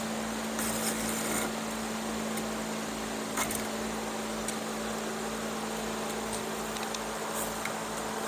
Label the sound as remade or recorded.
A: recorded